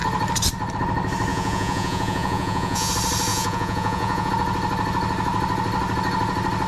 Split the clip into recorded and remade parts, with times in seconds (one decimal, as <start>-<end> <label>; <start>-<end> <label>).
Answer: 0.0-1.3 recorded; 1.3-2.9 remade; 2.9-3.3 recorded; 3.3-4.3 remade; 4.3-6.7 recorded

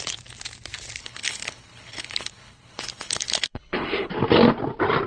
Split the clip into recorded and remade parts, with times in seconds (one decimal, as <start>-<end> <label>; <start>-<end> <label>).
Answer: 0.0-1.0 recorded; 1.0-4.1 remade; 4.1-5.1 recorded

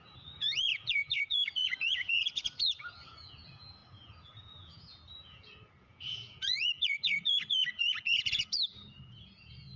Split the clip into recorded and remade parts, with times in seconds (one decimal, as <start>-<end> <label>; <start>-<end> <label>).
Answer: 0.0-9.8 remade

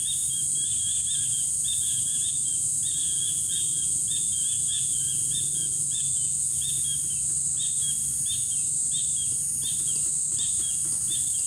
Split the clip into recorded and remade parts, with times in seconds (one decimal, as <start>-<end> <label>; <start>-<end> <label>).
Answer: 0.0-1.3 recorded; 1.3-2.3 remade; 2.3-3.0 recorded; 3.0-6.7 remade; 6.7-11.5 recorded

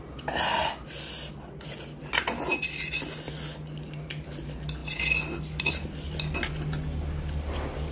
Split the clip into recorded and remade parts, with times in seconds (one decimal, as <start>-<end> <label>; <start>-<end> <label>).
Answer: 0.0-7.9 recorded